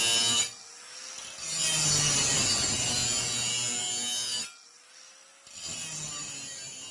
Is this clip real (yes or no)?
yes